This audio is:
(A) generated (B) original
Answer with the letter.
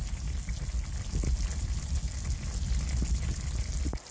B